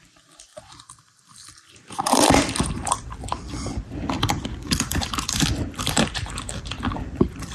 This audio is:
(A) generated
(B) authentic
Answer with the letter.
A